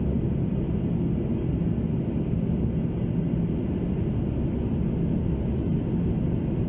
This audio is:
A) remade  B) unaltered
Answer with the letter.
B